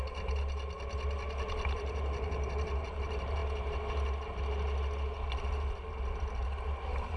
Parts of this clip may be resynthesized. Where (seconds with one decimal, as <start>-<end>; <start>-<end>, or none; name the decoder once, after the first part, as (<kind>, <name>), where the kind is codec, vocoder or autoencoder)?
none